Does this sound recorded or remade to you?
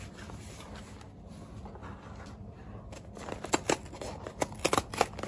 recorded